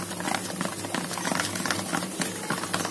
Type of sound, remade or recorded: recorded